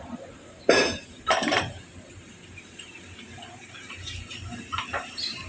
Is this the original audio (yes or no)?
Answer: no